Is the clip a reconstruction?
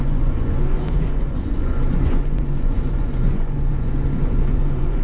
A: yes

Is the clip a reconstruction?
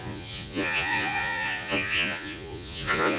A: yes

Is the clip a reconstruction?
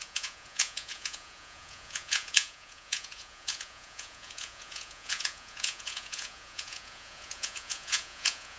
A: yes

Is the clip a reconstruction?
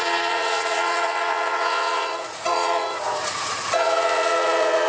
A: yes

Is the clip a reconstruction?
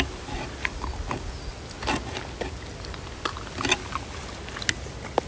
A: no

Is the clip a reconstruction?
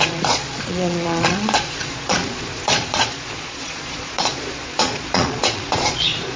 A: yes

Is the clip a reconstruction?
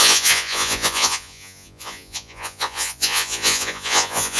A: yes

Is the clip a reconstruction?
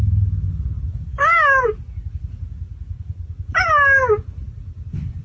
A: no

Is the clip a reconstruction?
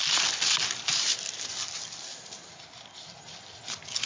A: no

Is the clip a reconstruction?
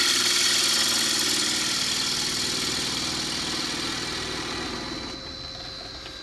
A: no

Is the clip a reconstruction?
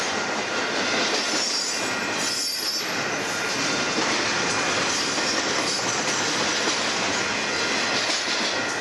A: no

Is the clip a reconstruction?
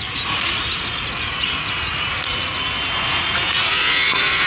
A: yes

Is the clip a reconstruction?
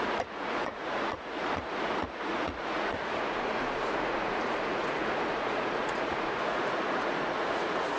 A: yes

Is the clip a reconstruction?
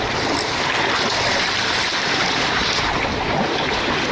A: no